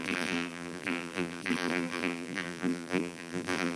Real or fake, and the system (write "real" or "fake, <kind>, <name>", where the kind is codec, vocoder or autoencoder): fake, vocoder, BigVGAN v2